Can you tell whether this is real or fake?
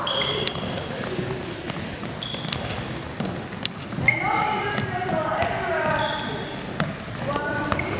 real